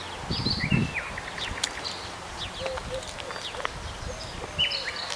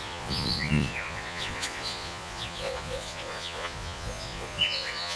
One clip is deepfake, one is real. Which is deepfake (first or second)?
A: second